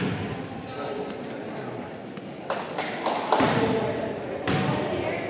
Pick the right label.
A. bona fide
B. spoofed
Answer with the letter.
A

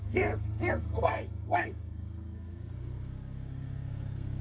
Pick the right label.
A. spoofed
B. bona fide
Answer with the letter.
A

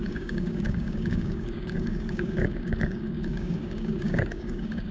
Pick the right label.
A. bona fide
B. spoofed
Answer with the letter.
B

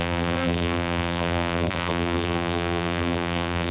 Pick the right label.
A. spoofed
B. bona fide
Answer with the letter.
A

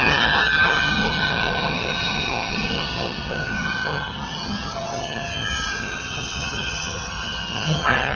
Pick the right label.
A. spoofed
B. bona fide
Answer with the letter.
A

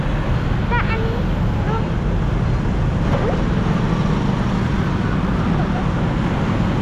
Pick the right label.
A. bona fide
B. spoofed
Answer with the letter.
A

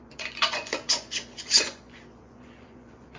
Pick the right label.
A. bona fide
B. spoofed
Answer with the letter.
B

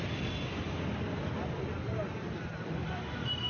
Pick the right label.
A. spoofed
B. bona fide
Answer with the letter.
B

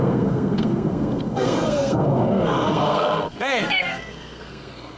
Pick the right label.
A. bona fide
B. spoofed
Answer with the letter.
B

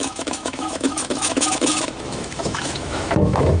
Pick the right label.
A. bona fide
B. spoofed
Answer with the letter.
B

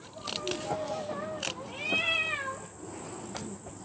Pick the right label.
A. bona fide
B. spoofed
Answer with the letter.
A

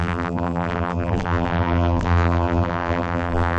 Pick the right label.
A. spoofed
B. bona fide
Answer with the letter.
A